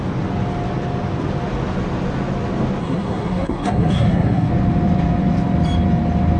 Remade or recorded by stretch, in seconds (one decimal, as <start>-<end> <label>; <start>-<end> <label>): 0.0-2.8 recorded; 2.8-4.5 remade; 4.5-6.4 recorded